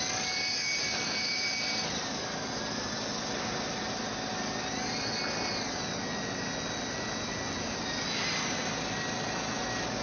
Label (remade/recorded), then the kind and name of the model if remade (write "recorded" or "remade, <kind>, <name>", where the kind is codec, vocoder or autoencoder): recorded